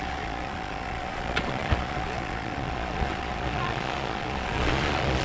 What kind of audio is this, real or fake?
fake